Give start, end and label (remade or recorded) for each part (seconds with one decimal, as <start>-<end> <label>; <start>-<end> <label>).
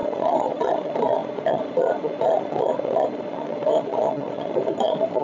0.0-5.2 remade